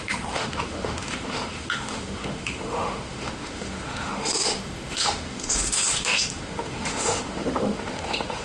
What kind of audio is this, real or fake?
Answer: fake